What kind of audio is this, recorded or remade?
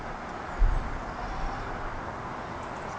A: recorded